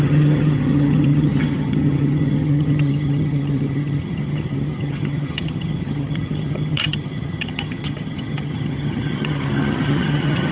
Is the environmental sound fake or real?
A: fake